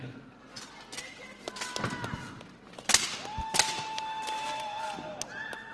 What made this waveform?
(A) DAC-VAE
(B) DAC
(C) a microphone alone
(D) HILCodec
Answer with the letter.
C